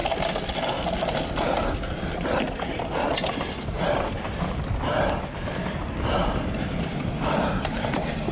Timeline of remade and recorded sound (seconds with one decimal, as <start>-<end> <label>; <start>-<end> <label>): 0.0-0.7 recorded; 0.7-8.3 remade